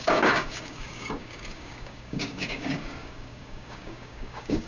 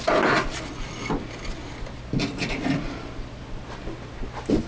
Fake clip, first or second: first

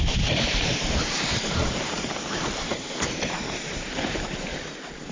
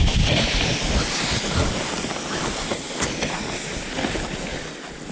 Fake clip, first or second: first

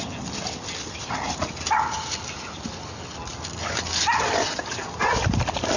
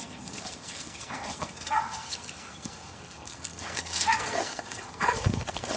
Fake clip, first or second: second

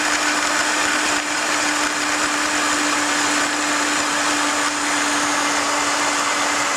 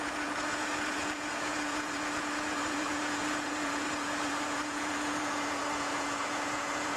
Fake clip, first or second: second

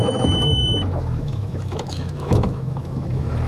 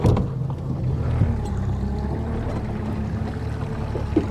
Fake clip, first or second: first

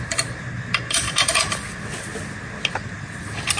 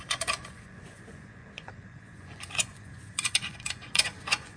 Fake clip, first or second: second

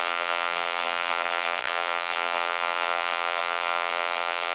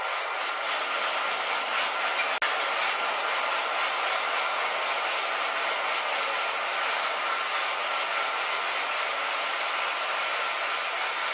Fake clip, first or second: first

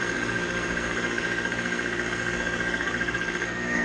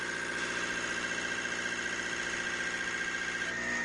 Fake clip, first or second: first